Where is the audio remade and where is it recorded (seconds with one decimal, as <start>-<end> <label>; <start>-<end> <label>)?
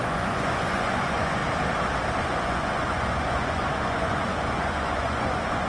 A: 0.0-1.4 remade; 1.4-2.2 recorded; 2.2-5.7 remade